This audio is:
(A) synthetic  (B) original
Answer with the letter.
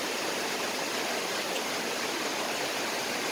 A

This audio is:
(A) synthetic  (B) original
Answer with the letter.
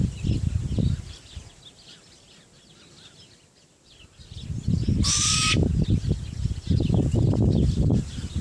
B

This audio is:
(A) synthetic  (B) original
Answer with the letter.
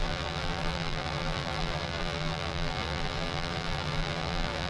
A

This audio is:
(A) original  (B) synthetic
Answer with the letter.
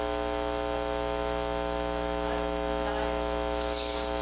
A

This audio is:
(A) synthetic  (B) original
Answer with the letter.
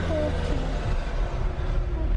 B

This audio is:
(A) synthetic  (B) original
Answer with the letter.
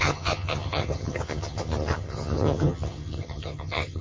A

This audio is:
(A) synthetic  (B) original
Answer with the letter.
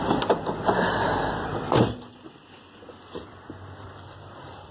B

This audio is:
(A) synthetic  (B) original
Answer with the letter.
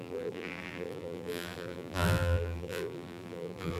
A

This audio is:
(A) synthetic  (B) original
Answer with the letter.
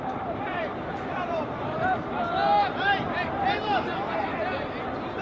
A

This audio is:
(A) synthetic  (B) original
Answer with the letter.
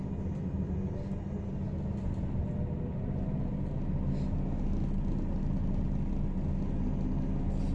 B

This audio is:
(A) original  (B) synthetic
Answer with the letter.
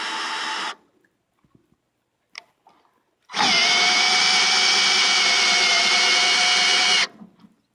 A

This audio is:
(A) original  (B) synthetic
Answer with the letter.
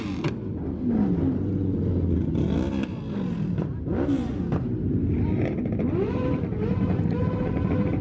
A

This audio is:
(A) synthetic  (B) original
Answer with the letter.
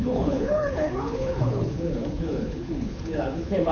A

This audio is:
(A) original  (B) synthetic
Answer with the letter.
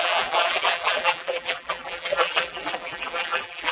B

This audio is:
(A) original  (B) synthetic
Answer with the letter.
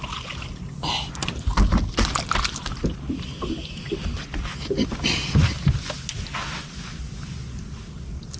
A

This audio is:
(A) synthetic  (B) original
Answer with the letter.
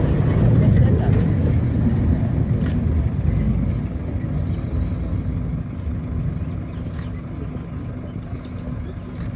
B